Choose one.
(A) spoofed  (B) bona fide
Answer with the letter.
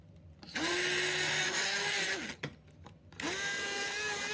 B